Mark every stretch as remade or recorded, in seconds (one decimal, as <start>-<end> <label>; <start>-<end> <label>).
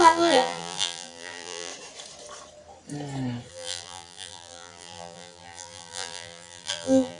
0.0-1.7 remade; 1.7-3.5 recorded; 3.5-7.2 remade